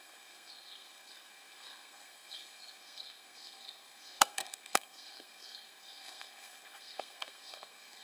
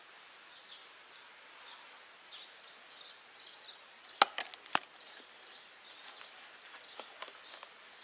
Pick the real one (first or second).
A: second